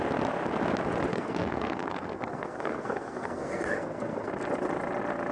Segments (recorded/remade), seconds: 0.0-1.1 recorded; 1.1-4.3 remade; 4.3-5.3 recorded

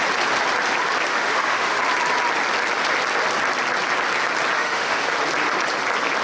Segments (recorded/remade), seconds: 0.0-1.1 recorded; 1.1-1.8 remade; 1.8-4.6 recorded; 4.6-5.1 remade; 5.1-6.2 recorded

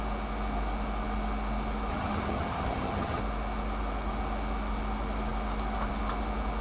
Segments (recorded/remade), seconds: 0.0-1.9 recorded; 1.9-3.2 remade; 3.2-6.6 recorded

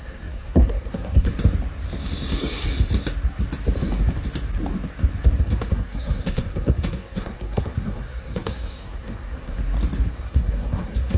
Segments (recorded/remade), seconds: 0.0-1.3 remade; 1.3-5.4 recorded; 5.4-9.6 remade; 9.6-10.1 recorded; 10.1-11.2 remade

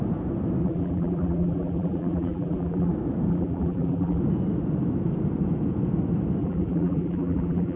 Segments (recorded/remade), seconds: 0.0-0.6 recorded; 0.6-2.9 remade; 2.9-3.3 recorded; 3.3-4.2 remade; 4.2-6.4 recorded; 6.4-7.8 remade

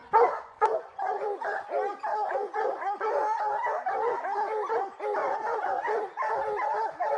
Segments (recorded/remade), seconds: 0.0-1.6 remade; 1.6-2.1 recorded; 2.1-3.1 remade; 3.1-5.2 recorded; 5.2-6.3 remade; 6.3-7.2 recorded